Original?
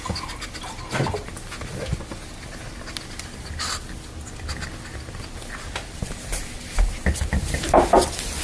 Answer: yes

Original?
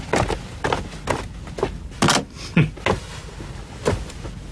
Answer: yes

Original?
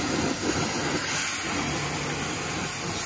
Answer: yes